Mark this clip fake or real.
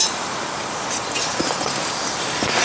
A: fake